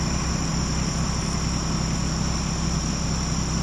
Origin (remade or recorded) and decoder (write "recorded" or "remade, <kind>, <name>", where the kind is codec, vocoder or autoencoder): recorded